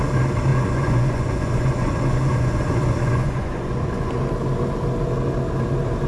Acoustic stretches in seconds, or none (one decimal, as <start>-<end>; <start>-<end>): 0.0-0.5; 4.2-6.1